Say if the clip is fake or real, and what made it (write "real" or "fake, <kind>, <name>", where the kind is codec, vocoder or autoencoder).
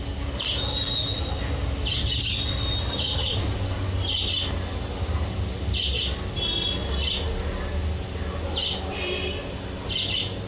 real